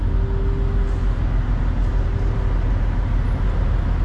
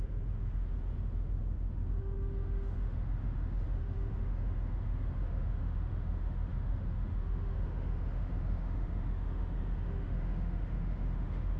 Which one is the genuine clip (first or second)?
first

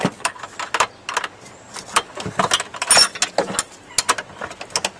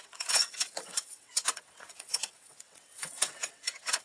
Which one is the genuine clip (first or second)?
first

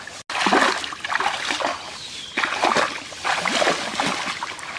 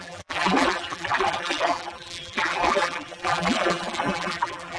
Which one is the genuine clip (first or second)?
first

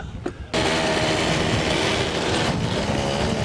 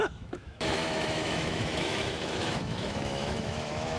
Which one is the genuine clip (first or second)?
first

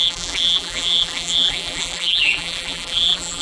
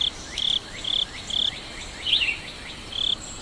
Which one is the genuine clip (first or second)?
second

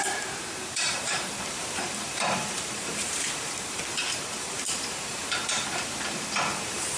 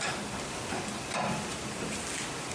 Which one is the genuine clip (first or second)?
second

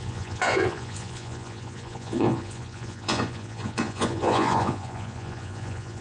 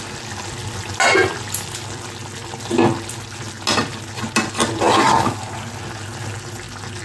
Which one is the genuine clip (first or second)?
second